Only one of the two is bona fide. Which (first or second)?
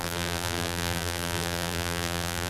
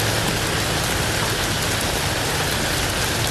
second